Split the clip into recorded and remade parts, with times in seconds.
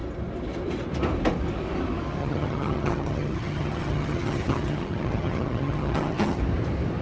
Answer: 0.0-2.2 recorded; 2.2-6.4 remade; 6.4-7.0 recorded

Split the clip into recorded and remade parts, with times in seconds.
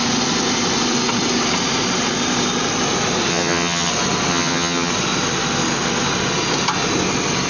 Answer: 0.0-3.3 recorded; 3.3-3.9 remade; 3.9-4.3 recorded; 4.3-4.9 remade; 4.9-7.5 recorded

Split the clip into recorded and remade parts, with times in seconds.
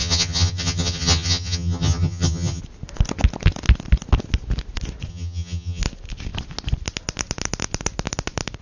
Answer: 0.0-2.6 remade; 2.6-5.1 recorded; 5.1-5.8 remade; 5.8-8.6 recorded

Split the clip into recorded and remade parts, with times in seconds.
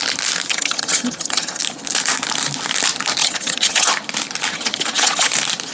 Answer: 0.0-0.5 recorded; 0.5-1.6 remade; 1.6-3.2 recorded; 3.2-3.9 remade; 3.9-4.5 recorded; 4.5-5.3 remade; 5.3-5.7 recorded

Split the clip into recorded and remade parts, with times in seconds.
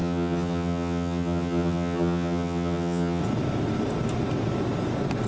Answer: 0.0-3.2 remade; 3.2-5.3 recorded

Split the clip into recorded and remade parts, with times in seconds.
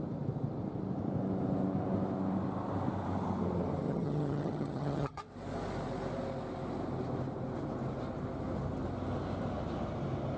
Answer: 0.0-3.9 recorded; 3.9-5.2 remade; 5.2-10.4 recorded